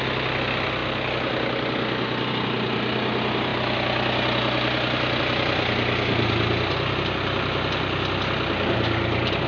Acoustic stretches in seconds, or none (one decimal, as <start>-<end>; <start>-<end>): 0.0-9.5